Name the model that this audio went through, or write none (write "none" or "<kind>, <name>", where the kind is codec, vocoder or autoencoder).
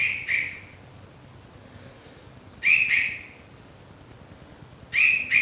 none